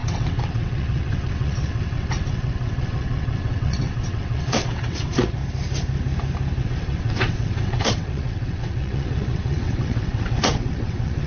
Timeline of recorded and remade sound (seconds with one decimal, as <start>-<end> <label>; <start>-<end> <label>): 0.0-5.4 remade; 5.4-6.6 recorded; 6.6-11.3 remade